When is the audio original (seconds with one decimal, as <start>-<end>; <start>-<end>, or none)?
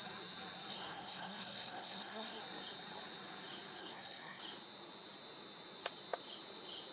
0.0-0.7; 2.4-3.8; 4.4-6.9